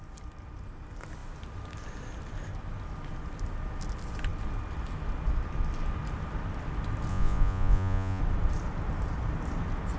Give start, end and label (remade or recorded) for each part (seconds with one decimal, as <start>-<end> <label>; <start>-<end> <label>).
0.0-7.1 recorded; 7.1-8.2 remade; 8.2-10.0 recorded